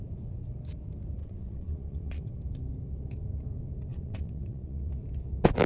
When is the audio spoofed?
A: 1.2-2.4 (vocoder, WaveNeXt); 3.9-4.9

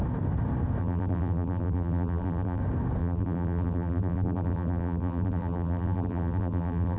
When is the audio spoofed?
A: 0.8-2.6 (vocoder, BigVGAN v2); 3.0-7.0

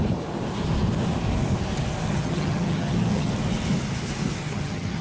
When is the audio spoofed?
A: 2.1-3.3 (vocoder, HiFi-GAN); 4.4-5.0

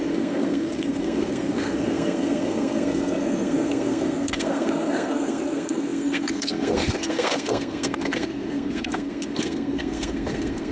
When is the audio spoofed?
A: 0.0-10.7 (codec, SNAC)

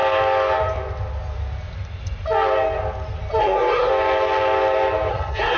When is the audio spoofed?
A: 3.4-3.9 (codec, SNAC); 5.1-5.6

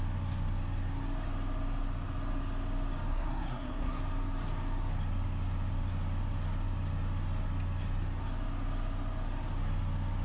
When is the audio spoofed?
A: 3.1-4.0 (codec, SNAC)

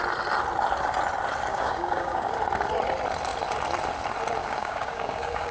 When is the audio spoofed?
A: 1.5-2.3 (codec, DAC); 4.4-5.5